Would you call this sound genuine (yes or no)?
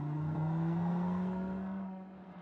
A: no